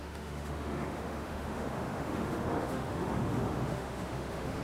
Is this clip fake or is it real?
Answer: fake